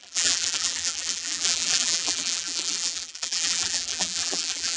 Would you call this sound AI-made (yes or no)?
yes